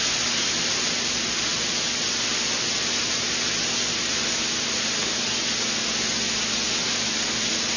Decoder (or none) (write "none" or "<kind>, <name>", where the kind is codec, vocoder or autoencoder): none